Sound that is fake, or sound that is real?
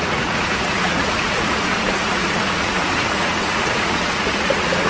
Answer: fake